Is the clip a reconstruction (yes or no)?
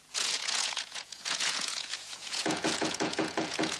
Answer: yes